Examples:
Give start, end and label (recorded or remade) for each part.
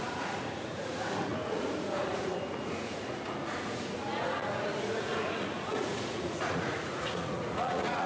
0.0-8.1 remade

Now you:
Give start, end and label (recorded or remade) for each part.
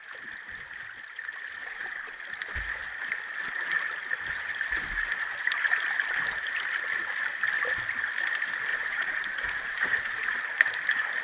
0.0-1.6 recorded; 1.6-2.2 remade; 2.2-8.7 recorded; 8.7-10.4 remade; 10.4-11.2 recorded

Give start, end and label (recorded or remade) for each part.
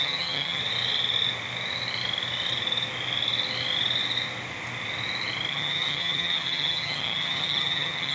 0.0-0.6 remade; 0.6-5.5 recorded; 5.5-8.1 remade